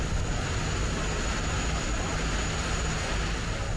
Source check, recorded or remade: recorded